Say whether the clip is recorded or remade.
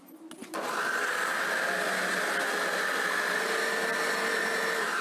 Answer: recorded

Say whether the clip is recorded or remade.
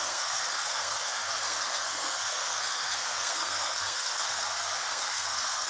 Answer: remade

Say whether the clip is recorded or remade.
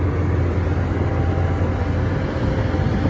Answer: recorded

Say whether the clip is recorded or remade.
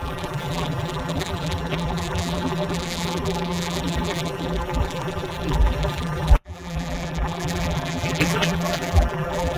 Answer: remade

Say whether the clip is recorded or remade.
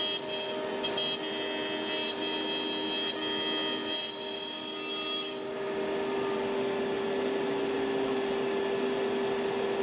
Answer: recorded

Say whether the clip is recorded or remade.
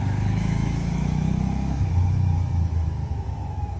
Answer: remade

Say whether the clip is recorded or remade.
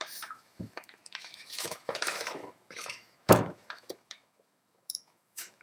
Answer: remade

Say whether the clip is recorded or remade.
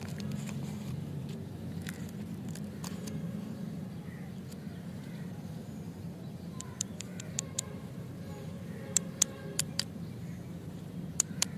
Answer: remade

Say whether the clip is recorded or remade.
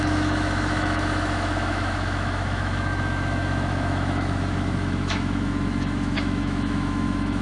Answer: remade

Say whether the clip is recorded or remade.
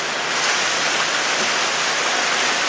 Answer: recorded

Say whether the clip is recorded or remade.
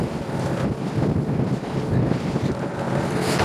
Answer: recorded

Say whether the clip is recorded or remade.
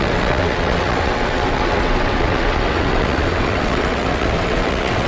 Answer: remade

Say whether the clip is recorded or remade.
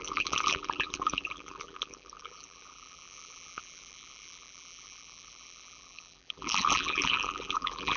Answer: remade